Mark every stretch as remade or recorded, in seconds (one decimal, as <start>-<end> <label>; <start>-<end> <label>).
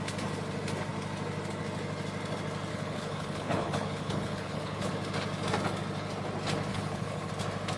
0.0-2.7 recorded; 2.7-4.9 remade; 4.9-6.7 recorded; 6.7-7.3 remade; 7.3-7.8 recorded